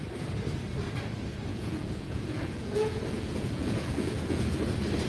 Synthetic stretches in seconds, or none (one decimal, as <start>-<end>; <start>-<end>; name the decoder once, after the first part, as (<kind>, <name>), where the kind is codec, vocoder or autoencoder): 1.5-4.6 (vocoder, Vocos)